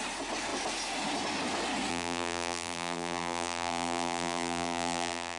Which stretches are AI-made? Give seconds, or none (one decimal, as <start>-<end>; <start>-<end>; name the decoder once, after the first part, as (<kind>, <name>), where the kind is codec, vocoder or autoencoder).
1.9-5.4 (vocoder, BigVGAN v2)

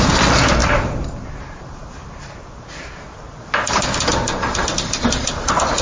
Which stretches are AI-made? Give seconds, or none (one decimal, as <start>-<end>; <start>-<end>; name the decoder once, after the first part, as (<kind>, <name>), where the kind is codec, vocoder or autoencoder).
0.6-3.4 (vocoder, BigVGAN v2)

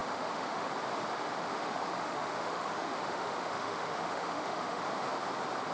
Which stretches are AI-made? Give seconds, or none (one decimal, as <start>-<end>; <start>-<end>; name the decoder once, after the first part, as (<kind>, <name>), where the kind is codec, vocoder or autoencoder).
0.0-0.7 (autoencoder, DAC-VAE); 1.4-4.8

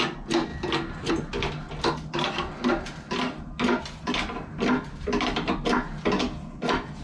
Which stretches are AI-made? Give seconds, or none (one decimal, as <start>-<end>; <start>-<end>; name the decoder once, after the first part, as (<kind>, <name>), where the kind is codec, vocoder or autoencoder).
none

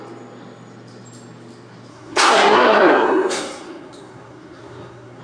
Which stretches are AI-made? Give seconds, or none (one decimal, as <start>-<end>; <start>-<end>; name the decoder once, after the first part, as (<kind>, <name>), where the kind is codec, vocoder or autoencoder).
1.9-5.2 (codec, SNAC)